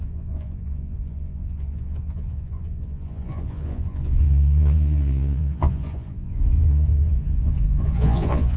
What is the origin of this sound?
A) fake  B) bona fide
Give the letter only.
A